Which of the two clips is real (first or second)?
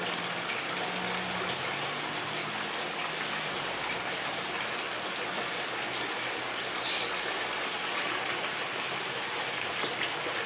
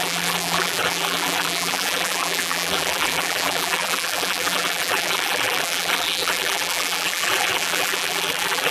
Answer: first